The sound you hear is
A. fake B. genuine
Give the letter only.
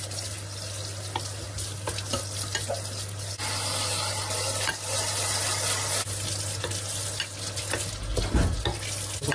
B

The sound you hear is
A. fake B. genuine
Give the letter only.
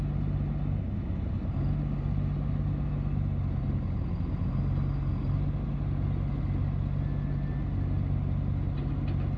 B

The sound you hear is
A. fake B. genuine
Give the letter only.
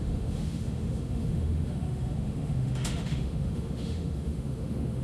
A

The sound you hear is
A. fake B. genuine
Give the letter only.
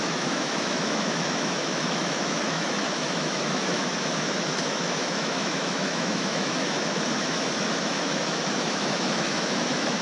A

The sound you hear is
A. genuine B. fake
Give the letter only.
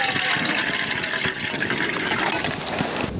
A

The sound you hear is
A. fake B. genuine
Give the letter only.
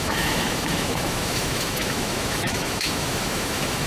A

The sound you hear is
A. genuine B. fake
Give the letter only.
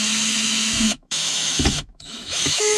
B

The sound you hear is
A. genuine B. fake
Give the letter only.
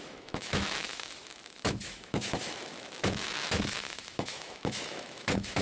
B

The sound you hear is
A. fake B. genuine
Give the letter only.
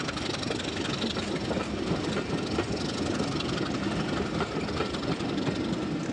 B